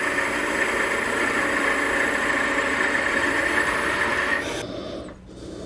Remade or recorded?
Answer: recorded